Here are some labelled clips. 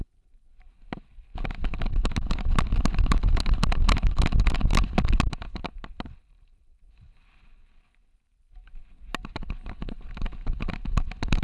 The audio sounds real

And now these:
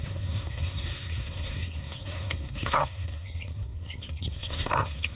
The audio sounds fake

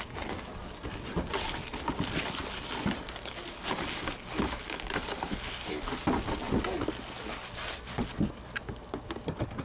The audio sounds real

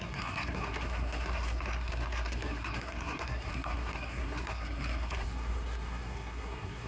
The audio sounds fake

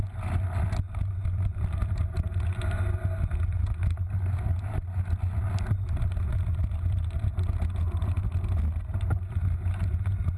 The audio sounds real